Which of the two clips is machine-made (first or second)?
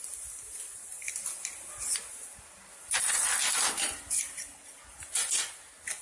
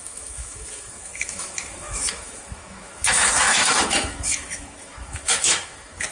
second